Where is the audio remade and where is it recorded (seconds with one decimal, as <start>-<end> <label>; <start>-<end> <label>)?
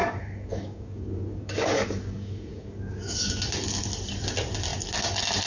0.0-3.3 remade; 3.3-5.5 recorded